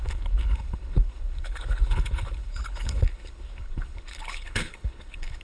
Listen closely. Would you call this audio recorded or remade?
remade